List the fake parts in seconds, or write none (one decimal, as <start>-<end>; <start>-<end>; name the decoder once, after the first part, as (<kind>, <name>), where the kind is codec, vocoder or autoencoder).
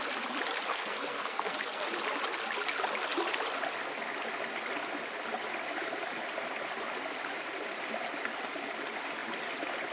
0.7-1.9 (codec, SNAC)